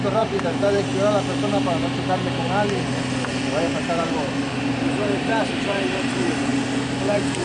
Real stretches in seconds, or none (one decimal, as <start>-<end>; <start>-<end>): 0.9-4.5; 6.5-7.4